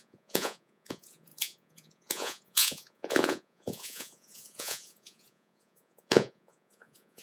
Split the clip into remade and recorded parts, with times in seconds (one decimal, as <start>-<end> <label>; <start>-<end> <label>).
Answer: 0.0-7.2 remade